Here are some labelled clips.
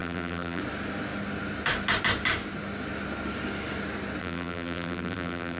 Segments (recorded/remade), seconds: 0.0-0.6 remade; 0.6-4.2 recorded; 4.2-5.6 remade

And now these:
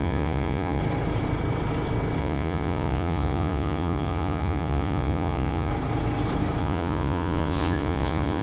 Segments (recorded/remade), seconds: 0.0-0.8 remade; 0.8-2.2 recorded; 2.2-5.7 remade; 5.7-6.6 recorded; 6.6-8.4 remade

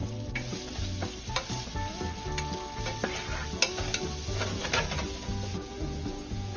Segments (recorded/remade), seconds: 0.0-5.5 recorded; 5.5-6.6 remade

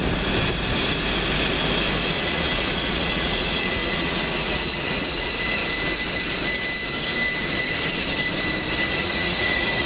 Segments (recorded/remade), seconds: 0.0-2.1 recorded; 2.1-5.6 remade; 5.6-9.0 recorded; 9.0-9.9 remade

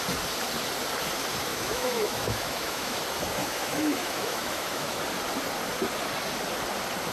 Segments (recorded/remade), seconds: 0.0-1.5 recorded; 1.5-3.0 remade; 3.0-3.4 recorded; 3.4-5.0 remade; 5.0-7.1 recorded

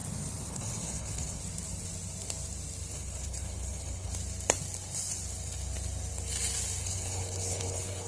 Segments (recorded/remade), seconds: 0.0-0.5 recorded; 0.5-1.4 remade; 1.4-2.9 recorded; 2.9-4.1 remade; 4.1-6.8 recorded; 6.8-8.1 remade